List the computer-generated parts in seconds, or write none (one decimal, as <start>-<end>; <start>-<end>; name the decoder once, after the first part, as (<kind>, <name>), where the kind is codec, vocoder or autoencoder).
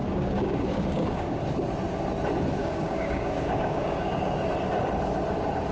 0.0-1.4 (codec, DAC); 2.6-4.4